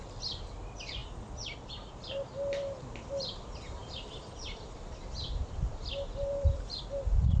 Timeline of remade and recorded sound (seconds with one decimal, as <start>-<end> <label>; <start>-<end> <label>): 0.0-1.0 remade; 1.0-1.7 recorded; 1.7-7.4 remade